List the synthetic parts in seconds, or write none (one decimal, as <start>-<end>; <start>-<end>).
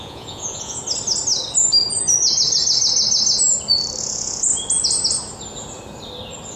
0.0-0.8; 4.0-4.5